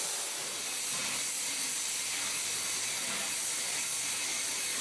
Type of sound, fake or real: real